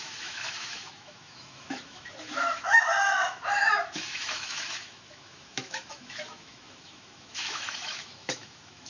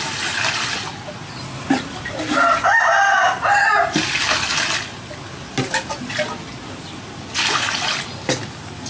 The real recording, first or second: second